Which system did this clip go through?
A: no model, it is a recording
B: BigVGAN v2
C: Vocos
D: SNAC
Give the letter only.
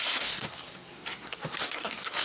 D